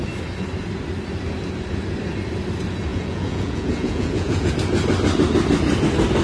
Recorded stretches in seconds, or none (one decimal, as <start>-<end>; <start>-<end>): 0.0-2.9; 4.5-6.2